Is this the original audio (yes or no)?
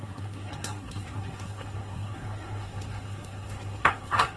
no